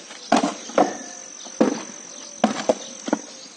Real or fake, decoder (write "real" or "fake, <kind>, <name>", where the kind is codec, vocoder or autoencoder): real